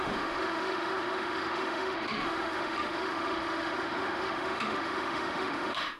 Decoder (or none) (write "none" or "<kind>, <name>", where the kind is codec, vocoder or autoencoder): autoencoder, DAC-VAE